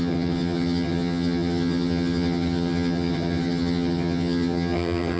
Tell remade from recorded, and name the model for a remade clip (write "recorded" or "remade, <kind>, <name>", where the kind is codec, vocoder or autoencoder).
remade, vocoder, HiFi-GAN